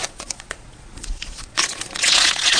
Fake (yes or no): yes